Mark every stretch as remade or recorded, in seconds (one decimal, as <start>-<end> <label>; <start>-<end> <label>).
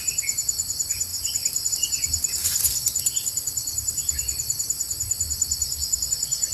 0.0-1.1 recorded; 1.1-1.7 remade; 1.7-2.4 recorded; 2.4-6.1 remade; 6.1-6.5 recorded